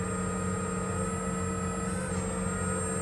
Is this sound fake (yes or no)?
no